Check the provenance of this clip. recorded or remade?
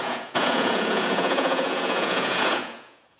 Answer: remade